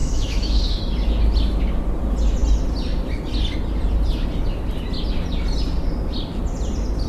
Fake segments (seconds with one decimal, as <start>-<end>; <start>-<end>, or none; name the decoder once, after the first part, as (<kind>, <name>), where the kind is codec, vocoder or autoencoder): 0.0-0.8 (autoencoder, DAC-VAE)